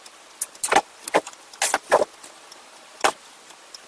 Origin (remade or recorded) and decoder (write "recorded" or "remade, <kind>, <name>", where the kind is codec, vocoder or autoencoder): recorded